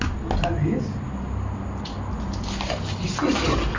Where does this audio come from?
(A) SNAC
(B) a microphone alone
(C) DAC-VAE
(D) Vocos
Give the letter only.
B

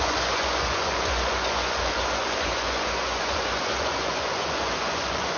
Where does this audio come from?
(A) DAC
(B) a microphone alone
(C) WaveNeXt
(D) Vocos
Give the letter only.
D